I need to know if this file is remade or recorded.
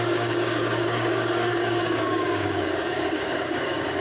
remade